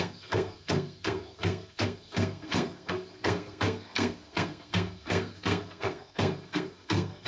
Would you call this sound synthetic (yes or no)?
yes